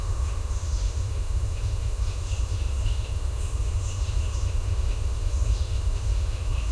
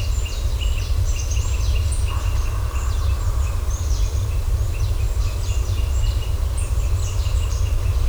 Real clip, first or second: second